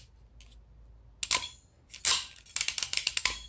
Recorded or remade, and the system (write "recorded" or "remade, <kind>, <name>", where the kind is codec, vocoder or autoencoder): recorded